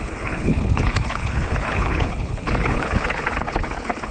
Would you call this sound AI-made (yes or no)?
yes